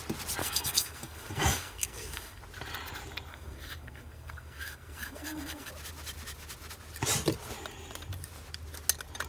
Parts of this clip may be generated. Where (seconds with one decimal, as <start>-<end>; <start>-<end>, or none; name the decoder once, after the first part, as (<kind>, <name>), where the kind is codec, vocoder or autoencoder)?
0.4-2.4 (codec, SNAC); 3.3-5.7